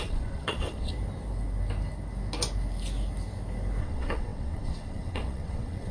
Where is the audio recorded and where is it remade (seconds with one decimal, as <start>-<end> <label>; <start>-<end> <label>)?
0.0-0.9 remade; 0.9-3.8 recorded; 3.8-5.9 remade